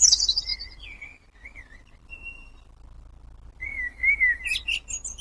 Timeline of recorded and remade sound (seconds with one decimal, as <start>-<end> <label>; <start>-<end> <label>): 0.0-3.7 recorded; 3.7-4.4 remade; 4.4-5.2 recorded